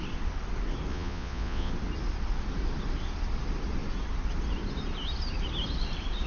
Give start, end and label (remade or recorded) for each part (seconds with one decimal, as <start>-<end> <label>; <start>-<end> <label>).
0.0-0.9 recorded; 0.9-1.7 remade; 1.7-6.3 recorded